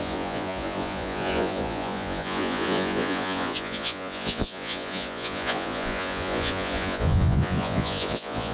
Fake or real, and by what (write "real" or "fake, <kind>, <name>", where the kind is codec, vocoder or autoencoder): fake, vocoder, Vocos